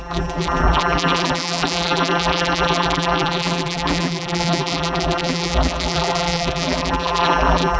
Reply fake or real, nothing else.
fake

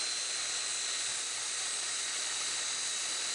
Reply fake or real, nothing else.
real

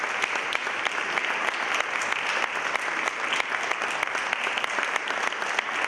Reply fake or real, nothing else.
real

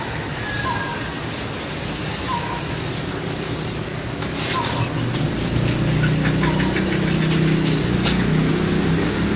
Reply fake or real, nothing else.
real